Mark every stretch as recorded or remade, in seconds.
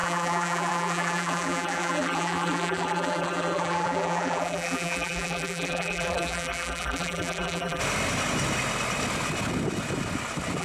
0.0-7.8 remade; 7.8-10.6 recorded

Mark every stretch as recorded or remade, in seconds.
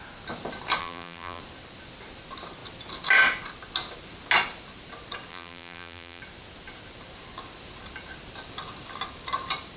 0.0-0.8 recorded; 0.8-1.4 remade; 1.4-5.3 recorded; 5.3-6.2 remade; 6.2-9.8 recorded